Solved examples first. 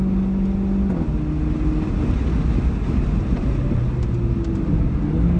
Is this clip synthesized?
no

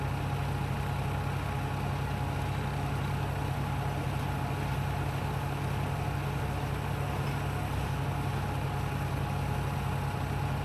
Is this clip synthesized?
no